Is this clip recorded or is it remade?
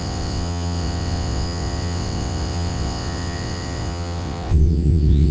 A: remade